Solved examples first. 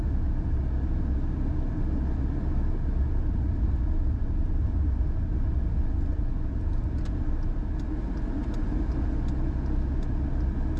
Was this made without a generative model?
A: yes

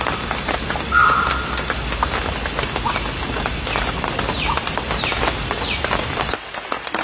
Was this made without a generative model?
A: yes